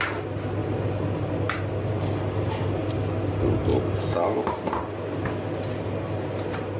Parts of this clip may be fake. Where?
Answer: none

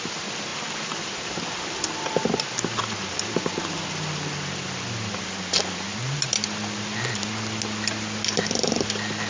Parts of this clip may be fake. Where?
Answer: none

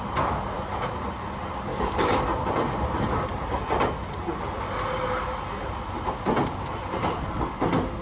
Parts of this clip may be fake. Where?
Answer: 1.7-2.2 (codec, DAC)

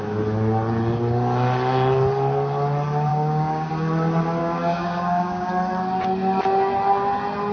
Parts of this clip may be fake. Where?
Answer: 3.1-3.7 (codec, DAC); 4.4-5.5